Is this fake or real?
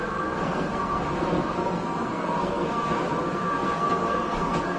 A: fake